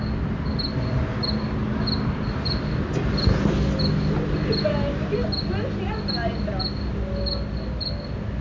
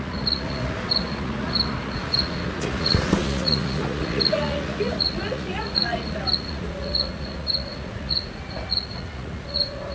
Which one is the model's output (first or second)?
second